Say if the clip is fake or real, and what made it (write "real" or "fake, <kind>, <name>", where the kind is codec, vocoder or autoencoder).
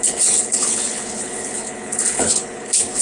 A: fake, codec, HILCodec